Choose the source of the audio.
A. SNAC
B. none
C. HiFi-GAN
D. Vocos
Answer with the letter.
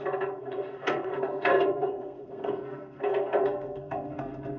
A